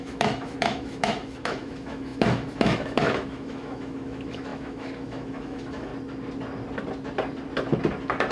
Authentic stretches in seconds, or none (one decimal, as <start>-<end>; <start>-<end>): 5.9-8.3